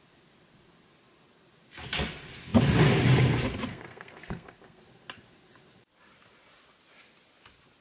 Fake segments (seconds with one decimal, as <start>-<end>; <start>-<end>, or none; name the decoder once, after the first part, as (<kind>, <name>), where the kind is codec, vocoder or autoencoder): 3.7-4.8 (codec, SNAC)